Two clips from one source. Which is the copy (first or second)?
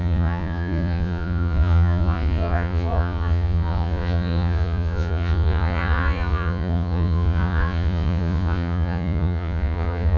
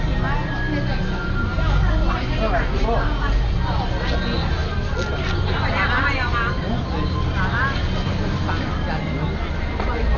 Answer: first